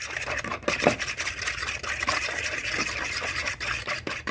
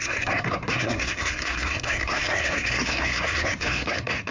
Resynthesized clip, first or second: second